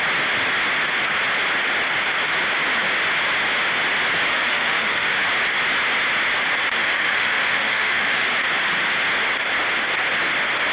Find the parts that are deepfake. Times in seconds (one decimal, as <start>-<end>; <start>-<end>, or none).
4.3-5.2; 6.8-8.3